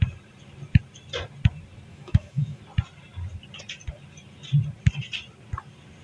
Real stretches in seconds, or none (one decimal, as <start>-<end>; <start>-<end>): 0.0-1.9; 2.6-6.0